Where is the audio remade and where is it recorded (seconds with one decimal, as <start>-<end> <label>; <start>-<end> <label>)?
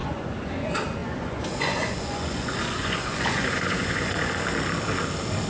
0.0-0.5 remade; 0.5-1.0 recorded; 1.0-4.3 remade; 4.3-5.5 recorded